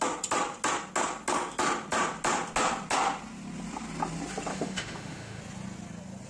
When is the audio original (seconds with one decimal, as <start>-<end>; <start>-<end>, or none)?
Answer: 0.0-4.5; 5.4-6.3